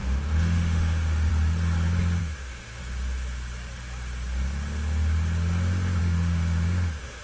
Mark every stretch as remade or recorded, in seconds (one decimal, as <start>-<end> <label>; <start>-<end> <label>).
0.0-1.3 remade; 1.3-2.2 recorded; 2.2-2.8 remade; 2.8-6.0 recorded; 6.0-7.2 remade